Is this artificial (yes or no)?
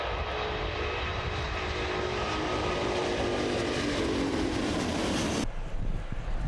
no